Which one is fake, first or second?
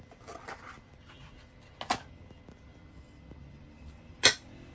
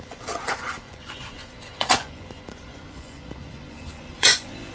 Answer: second